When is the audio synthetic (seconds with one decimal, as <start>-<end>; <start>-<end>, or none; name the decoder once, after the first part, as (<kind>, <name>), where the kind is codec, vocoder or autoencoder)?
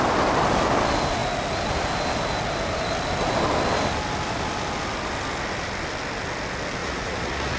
6.8-7.6 (vocoder, Vocos)